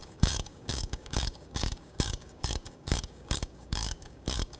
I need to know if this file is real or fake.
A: fake